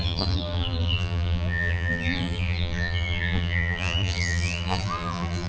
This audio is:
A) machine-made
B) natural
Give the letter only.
A